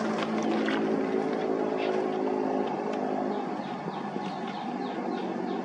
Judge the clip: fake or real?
real